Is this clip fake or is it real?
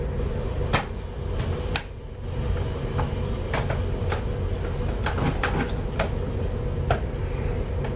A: real